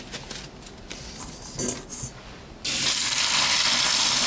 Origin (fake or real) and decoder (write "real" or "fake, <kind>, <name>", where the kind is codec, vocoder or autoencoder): real